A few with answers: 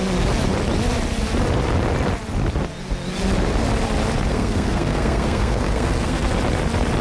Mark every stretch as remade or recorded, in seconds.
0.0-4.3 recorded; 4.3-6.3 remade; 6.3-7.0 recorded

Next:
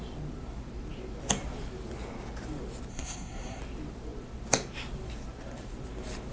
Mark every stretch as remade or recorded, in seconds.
0.0-2.9 recorded; 2.9-3.6 remade; 3.6-6.3 recorded

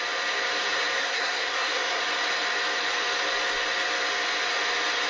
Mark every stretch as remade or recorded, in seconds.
0.0-1.0 recorded; 1.0-2.0 remade; 2.0-5.1 recorded

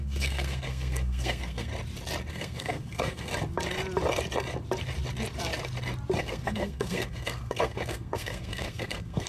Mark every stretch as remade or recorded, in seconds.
0.0-1.7 remade; 1.7-2.3 recorded; 2.3-3.3 remade; 3.3-6.2 recorded; 6.2-9.3 remade

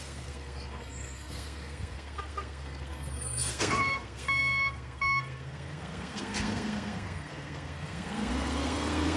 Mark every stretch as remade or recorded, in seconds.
0.0-9.2 remade

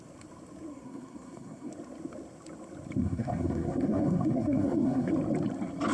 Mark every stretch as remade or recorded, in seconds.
0.0-0.7 recorded; 0.7-1.7 remade; 1.7-3.0 recorded; 3.0-5.1 remade; 5.1-5.9 recorded

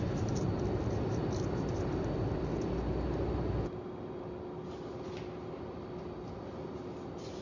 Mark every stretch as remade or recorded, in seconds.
0.0-7.4 recorded